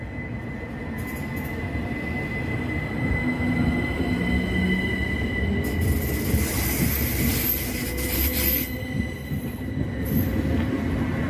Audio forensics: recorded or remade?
recorded